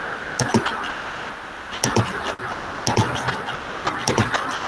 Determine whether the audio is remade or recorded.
recorded